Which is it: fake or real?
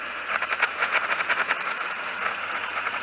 fake